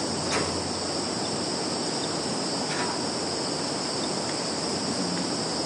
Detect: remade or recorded recorded